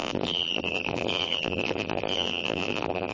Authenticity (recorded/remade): remade